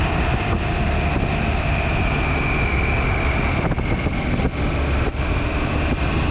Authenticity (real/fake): real